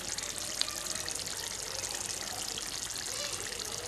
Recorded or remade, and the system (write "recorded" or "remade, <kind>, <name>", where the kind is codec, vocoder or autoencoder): recorded